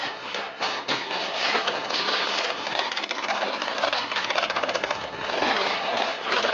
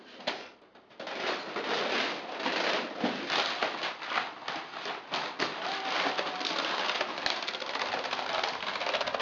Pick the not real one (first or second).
first